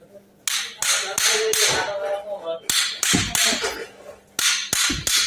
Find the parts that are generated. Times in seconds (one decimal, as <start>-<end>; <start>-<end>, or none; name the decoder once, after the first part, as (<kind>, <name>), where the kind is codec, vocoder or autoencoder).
none